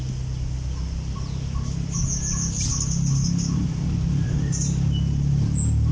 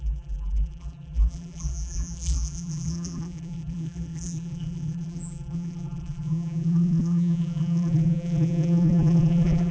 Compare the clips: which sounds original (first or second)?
first